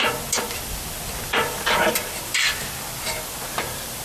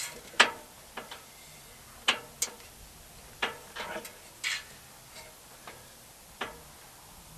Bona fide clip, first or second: second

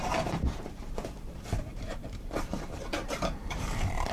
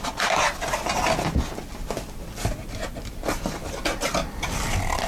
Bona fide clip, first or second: second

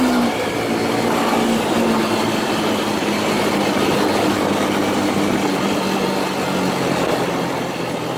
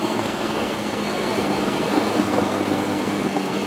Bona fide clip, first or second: first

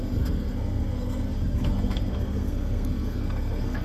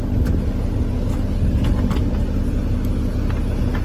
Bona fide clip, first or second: second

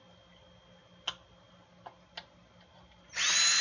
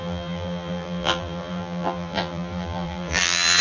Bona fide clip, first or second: first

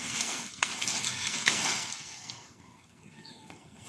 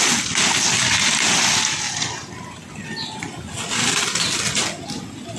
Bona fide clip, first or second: second